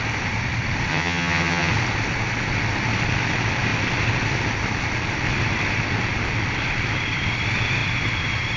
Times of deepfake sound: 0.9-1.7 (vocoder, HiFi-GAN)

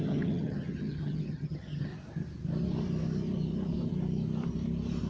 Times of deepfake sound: 0.0-1.9 (vocoder, HiFi-GAN)

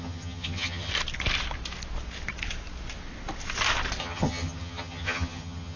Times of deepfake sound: 0.0-0.9 (vocoder, HiFi-GAN); 4.0-5.8

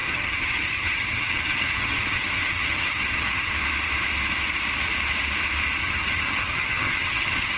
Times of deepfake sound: 0.0-3.5 (vocoder, HiFi-GAN); 5.8-7.6

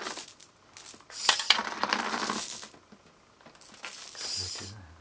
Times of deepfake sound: none